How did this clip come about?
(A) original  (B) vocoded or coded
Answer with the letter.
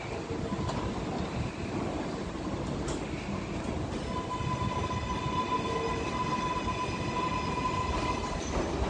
A